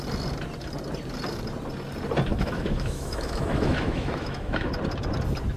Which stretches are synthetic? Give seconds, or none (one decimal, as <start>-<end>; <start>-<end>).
2.3-4.7